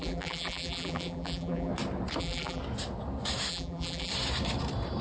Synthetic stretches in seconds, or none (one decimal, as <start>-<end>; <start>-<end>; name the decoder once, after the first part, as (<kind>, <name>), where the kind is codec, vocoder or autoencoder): 0.0-1.7 (vocoder, BigVGAN v2); 2.2-2.6; 3.5-4.1